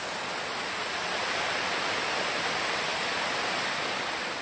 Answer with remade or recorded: recorded